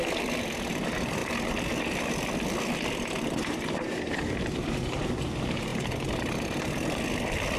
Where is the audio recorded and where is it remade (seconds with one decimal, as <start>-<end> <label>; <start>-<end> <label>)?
0.0-1.2 recorded; 1.2-5.1 remade; 5.1-5.7 recorded; 5.7-6.7 remade; 6.7-7.6 recorded